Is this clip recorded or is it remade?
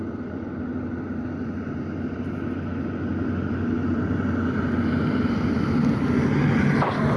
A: recorded